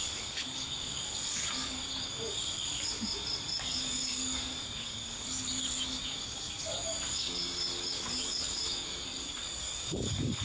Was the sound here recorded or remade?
remade